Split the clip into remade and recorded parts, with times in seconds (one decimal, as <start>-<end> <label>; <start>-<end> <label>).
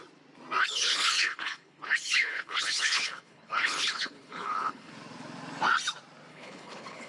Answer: 0.0-0.6 recorded; 0.6-4.9 remade; 4.9-6.3 recorded; 6.3-7.1 remade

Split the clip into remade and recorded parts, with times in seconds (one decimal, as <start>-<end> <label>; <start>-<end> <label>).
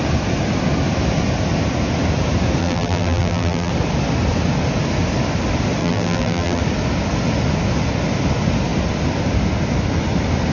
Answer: 0.0-2.6 recorded; 2.6-3.7 remade; 3.7-5.8 recorded; 5.8-6.6 remade; 6.6-10.5 recorded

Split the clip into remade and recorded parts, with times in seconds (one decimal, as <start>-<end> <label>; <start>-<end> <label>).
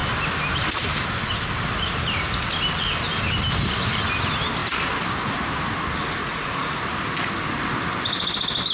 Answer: 0.0-6.2 recorded; 6.2-6.8 remade; 6.8-8.7 recorded